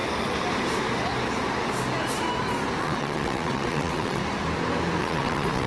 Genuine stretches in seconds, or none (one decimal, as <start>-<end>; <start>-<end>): 0.0-2.8; 4.2-5.0